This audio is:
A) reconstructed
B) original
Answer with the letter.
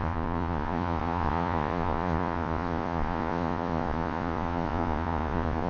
A